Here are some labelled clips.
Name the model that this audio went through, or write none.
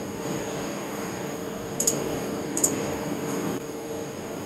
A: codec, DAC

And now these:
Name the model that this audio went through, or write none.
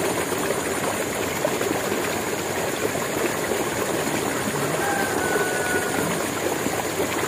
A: none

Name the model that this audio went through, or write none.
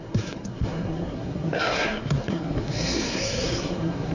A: codec, SNAC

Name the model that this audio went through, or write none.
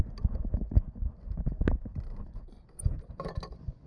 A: none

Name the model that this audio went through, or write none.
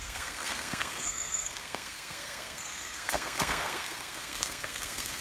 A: codec, SNAC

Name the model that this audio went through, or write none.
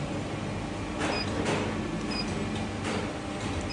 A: none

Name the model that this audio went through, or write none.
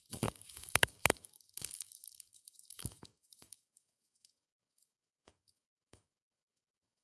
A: codec, DAC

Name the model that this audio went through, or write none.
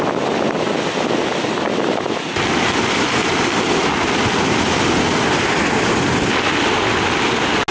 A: none